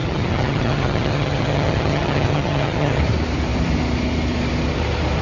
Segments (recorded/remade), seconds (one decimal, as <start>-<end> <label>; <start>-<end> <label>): 0.0-3.0 remade; 3.0-5.2 recorded